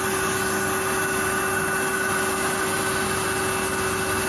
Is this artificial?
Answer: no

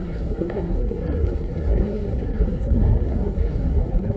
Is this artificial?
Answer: yes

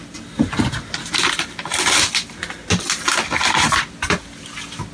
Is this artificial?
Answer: no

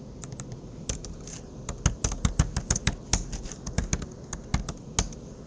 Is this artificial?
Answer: no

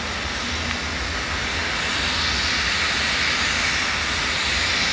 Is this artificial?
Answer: no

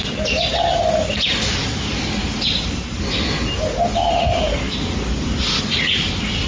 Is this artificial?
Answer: no